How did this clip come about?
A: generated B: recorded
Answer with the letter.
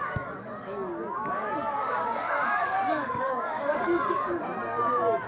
A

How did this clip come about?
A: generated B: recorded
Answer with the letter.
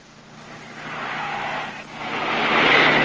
B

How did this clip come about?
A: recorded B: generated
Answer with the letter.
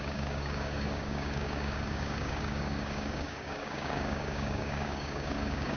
B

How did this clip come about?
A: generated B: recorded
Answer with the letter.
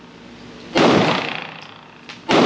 B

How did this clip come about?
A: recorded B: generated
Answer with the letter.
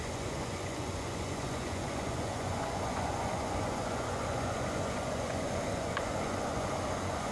B